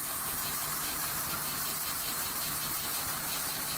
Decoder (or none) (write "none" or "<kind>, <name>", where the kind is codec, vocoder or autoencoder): vocoder, BigVGAN v2